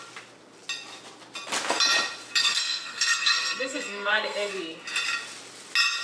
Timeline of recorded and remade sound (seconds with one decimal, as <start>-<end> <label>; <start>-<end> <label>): 0.0-2.4 recorded; 2.4-4.5 remade; 4.5-6.0 recorded